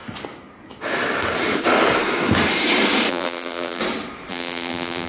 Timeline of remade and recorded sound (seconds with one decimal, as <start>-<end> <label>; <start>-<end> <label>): 0.0-3.1 recorded; 3.1-3.8 remade; 3.8-4.3 recorded; 4.3-5.1 remade